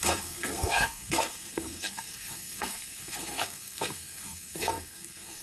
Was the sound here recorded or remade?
remade